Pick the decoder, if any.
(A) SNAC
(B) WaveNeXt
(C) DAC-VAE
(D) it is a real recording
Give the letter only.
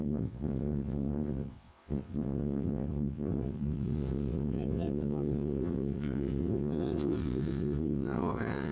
B